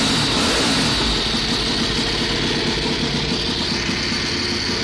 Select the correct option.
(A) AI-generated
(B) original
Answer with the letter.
B